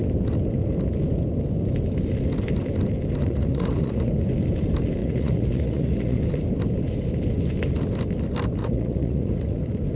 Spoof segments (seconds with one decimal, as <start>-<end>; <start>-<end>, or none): 3.2-4.1; 5.0-6.2; 8.6-9.6